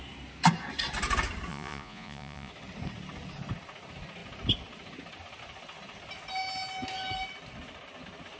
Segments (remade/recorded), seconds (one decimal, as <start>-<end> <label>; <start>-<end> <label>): 0.0-1.5 recorded; 1.5-2.5 remade; 2.5-8.4 recorded